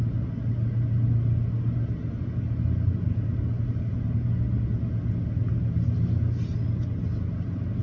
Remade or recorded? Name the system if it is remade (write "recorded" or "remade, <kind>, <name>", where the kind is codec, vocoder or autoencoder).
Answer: recorded